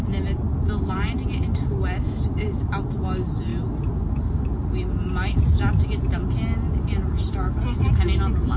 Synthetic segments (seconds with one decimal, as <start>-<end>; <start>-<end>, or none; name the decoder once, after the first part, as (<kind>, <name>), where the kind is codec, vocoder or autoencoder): none